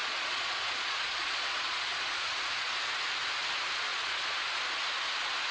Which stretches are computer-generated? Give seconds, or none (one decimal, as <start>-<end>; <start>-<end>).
0.0-2.7; 3.9-4.6